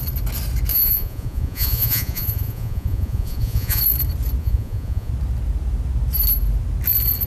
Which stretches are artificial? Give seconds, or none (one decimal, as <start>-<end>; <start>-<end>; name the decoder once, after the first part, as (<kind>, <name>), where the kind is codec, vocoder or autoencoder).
0.7-3.8 (vocoder, Vocos); 4.4-5.1